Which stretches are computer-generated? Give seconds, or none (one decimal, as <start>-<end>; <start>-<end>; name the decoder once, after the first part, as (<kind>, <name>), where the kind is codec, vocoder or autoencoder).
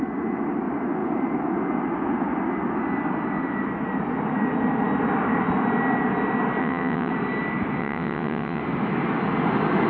6.6-7.1 (vocoder, WaveNeXt); 7.8-8.6